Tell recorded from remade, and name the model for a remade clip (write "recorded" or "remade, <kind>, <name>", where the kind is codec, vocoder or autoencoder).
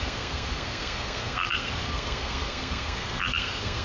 remade, codec, SNAC